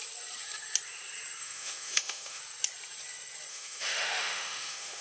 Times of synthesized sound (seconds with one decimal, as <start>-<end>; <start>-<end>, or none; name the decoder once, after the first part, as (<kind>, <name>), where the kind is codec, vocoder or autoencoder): 1.4-2.4 (autoencoder, DAC-VAE); 3.5-5.0